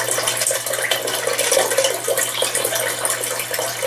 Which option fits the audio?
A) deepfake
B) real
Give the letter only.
B